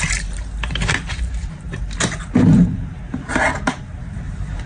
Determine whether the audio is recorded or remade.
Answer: remade